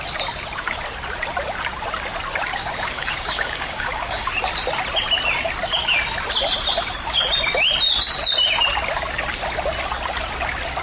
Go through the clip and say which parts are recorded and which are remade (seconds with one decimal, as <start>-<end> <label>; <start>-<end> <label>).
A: 0.0-2.5 recorded; 2.5-4.3 remade; 4.3-10.8 recorded